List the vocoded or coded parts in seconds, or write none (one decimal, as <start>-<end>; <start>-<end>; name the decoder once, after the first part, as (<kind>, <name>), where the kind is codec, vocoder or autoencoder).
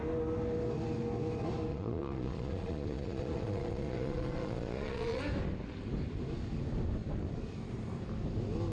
1.7-5.2 (vocoder, Vocos)